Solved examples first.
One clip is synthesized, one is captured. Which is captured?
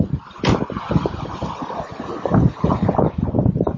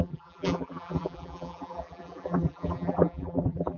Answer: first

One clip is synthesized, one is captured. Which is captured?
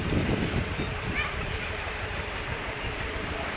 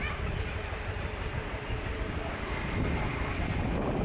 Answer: second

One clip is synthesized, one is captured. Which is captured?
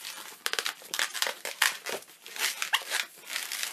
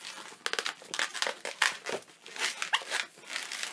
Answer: second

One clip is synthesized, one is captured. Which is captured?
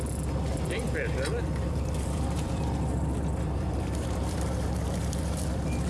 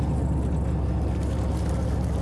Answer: second